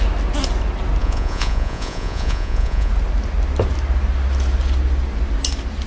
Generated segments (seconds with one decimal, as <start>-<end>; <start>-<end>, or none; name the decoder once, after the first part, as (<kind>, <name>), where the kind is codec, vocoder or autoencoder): 1.0-2.9 (vocoder, Vocos)